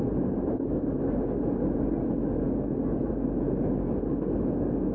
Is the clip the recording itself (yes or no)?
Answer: yes